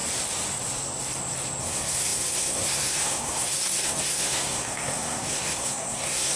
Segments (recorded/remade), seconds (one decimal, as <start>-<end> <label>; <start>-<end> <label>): 0.0-1.6 recorded; 1.6-6.4 remade